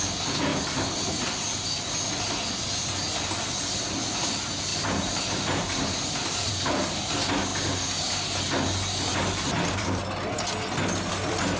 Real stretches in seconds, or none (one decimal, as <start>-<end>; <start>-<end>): 0.0-0.5; 2.2-4.7; 6.5-9.1; 10.0-11.6